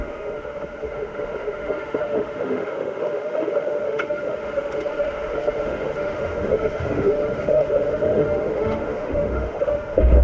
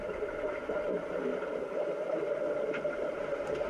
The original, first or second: second